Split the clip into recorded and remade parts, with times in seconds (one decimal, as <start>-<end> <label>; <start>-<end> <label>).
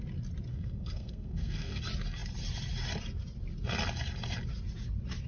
0.0-0.5 recorded; 0.5-1.8 remade; 1.8-5.3 recorded